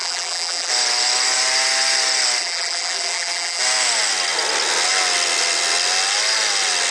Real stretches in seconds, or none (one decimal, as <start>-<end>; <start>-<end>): 0.7-2.4; 3.6-6.9

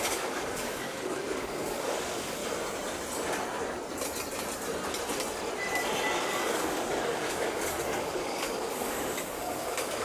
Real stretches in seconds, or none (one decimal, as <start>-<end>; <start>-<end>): 2.4-6.2

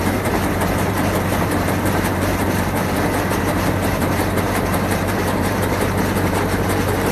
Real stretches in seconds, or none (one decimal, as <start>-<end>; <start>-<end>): 2.8-3.4

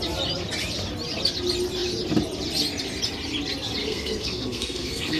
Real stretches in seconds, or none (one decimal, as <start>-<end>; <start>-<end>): 0.0-3.8

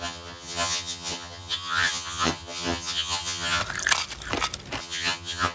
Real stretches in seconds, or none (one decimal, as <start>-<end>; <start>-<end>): 3.6-4.8

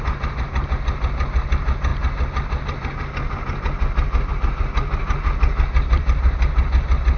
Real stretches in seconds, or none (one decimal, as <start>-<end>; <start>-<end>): 0.0-7.2